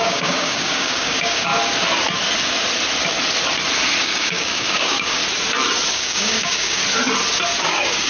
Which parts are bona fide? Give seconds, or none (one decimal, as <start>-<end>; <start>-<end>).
1.5-4.0; 5.2-5.9; 6.8-7.6